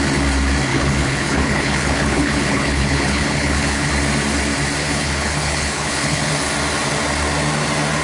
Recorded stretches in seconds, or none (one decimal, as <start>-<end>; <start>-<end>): 0.0-0.7; 3.9-4.8; 6.3-8.0